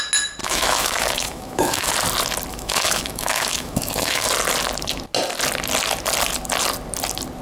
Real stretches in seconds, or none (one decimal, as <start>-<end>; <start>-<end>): 0.0-0.4; 1.9-2.5; 4.3-7.4